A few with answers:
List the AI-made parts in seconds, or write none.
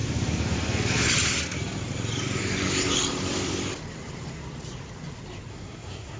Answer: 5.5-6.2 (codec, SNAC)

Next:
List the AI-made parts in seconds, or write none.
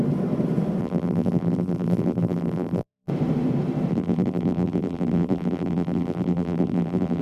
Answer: 0.8-3.1 (vocoder, BigVGAN v2); 3.9-7.2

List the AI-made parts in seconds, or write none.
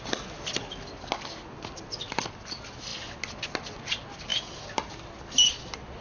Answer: none